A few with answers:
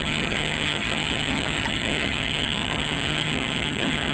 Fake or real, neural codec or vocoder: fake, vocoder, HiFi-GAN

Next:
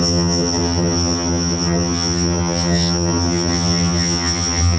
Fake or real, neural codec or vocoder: fake, vocoder, HiFi-GAN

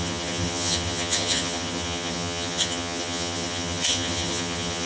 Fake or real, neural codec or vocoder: fake, vocoder, HiFi-GAN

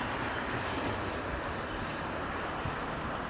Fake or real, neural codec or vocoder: real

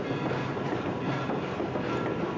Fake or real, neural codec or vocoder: real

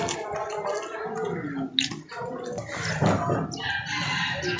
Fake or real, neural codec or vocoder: real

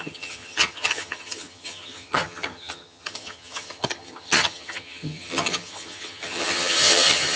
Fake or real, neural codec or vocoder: fake, vocoder, HiFi-GAN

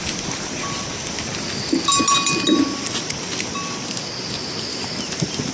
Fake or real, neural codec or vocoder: real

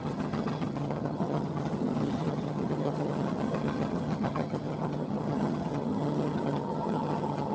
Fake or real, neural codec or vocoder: fake, vocoder, HiFi-GAN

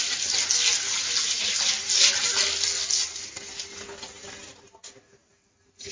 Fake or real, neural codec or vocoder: real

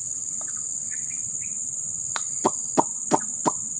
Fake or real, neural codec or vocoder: real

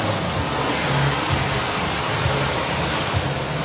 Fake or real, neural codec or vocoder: real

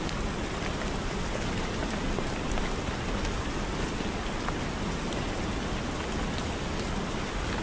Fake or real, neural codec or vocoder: real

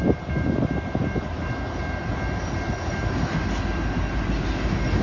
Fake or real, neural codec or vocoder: real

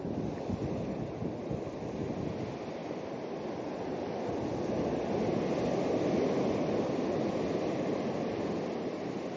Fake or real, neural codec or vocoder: real